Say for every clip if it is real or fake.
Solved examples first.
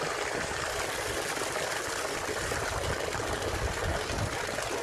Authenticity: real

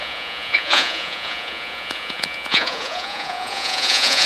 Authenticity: fake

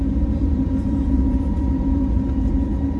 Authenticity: fake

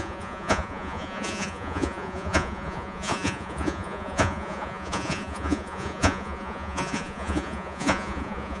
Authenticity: fake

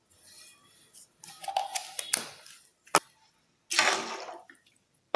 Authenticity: real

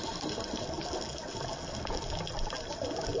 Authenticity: real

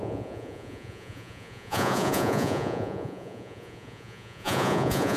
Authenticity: fake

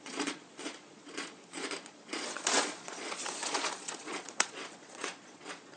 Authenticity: fake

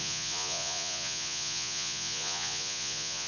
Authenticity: fake